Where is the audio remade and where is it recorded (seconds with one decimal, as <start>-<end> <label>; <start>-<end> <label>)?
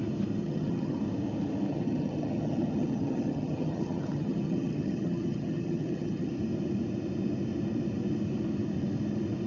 0.0-0.4 recorded; 0.4-1.0 remade; 1.0-1.7 recorded; 1.7-6.3 remade; 6.3-9.5 recorded